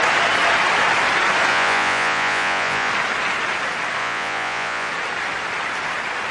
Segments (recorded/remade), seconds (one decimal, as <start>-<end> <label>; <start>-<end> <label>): 0.0-1.5 recorded; 1.5-2.9 remade; 2.9-4.0 recorded; 4.0-4.9 remade; 4.9-6.3 recorded